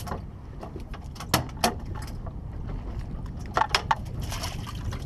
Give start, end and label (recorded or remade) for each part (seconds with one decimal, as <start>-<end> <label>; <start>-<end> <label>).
0.0-5.1 recorded